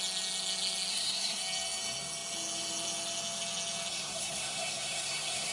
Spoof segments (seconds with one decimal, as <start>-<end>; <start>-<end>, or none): 0.9-1.4; 3.9-5.5